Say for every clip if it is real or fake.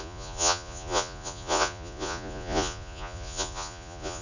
fake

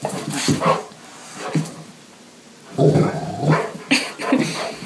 real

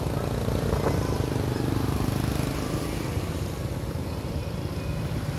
real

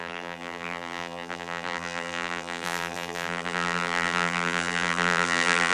fake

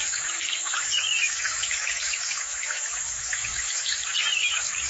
fake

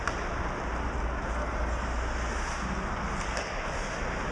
real